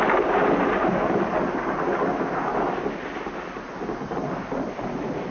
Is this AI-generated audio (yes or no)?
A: no